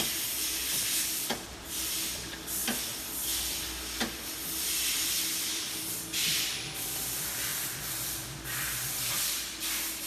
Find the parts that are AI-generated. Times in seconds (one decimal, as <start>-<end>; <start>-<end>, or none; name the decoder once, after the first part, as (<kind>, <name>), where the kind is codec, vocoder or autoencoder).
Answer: 0.0-2.6 (vocoder, BigVGAN v2); 4.7-10.1